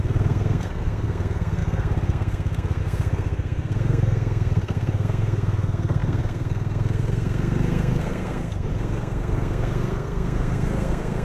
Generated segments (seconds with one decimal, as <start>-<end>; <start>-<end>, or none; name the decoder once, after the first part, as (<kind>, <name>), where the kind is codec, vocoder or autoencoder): 0.0-11.2 (codec, SNAC)